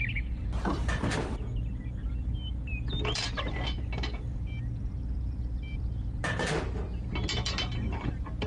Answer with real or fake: real